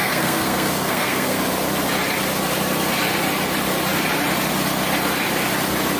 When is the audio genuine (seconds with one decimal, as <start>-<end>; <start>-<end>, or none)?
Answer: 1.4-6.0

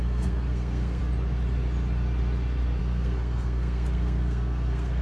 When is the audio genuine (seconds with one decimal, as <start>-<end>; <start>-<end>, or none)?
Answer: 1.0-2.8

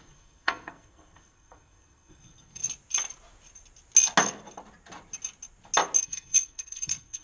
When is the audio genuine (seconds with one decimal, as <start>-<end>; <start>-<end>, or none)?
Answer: 2.6-6.0

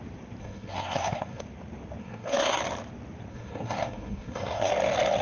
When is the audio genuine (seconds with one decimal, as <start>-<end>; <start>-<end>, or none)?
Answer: 0.0-0.4; 1.4-2.0; 2.6-3.3; 4.7-5.2

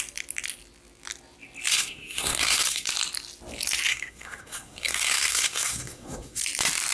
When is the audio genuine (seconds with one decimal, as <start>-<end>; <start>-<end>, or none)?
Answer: 0.0-1.7; 2.9-3.9; 6.4-6.9